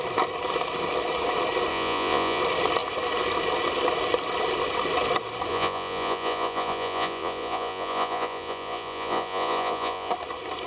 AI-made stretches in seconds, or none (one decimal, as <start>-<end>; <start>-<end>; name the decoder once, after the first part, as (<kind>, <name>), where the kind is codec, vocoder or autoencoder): 1.7-2.4 (vocoder, Vocos); 5.5-10.1